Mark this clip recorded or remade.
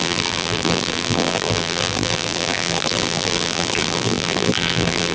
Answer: remade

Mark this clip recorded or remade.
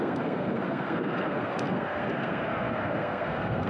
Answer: remade